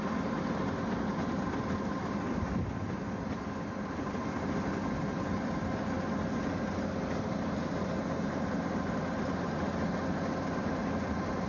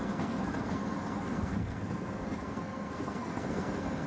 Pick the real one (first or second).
first